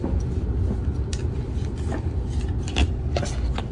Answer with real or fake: real